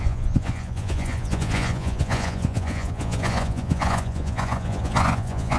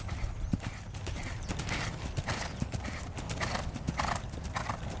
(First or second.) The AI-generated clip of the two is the first